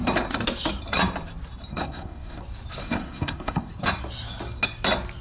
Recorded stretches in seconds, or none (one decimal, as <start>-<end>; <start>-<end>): 0.0-1.7; 2.4-2.8; 3.7-5.2